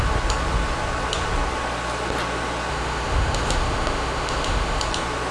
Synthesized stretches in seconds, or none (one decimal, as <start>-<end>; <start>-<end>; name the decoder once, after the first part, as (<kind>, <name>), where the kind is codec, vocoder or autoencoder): 2.7-4.8 (autoencoder, DAC-VAE)